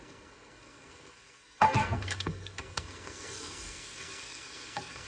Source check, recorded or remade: remade